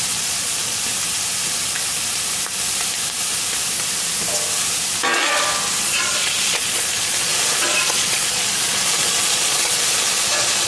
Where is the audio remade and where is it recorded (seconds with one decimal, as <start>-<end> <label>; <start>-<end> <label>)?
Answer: 0.0-0.9 remade; 0.9-5.8 recorded; 5.8-10.7 remade